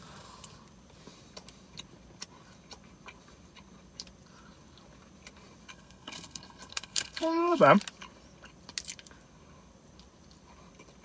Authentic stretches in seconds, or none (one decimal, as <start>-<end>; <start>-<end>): 0.0-5.7; 7.6-11.0